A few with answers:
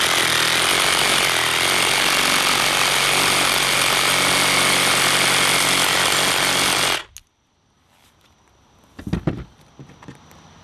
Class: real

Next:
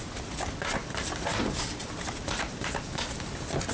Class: real